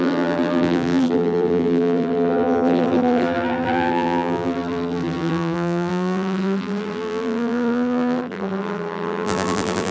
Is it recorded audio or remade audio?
remade